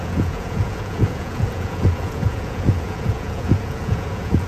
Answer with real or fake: fake